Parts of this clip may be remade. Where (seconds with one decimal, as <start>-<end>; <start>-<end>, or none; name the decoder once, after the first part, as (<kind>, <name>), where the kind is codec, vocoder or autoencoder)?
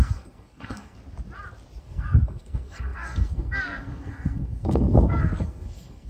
0.0-1.0 (codec, SNAC); 1.8-6.1